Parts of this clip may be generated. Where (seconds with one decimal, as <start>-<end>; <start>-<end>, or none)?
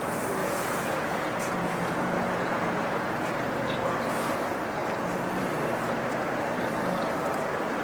0.4-3.3